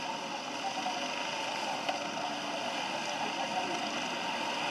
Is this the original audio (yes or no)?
yes